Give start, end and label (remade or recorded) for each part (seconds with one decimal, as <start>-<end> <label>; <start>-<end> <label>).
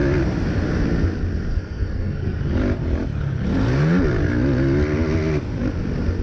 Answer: 0.0-1.5 recorded; 1.5-2.4 remade; 2.4-6.2 recorded